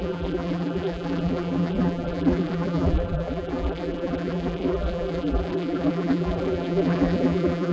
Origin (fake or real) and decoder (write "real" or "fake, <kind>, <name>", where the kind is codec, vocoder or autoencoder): fake, vocoder, BigVGAN v2